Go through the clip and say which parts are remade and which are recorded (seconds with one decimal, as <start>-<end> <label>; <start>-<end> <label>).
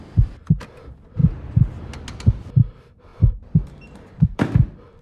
0.0-1.2 remade; 1.2-2.3 recorded; 2.3-5.0 remade